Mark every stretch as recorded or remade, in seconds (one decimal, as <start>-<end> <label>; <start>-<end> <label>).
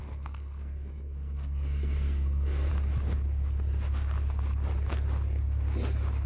0.0-2.7 remade; 2.7-6.3 recorded